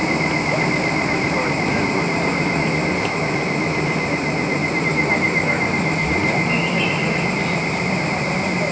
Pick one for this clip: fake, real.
real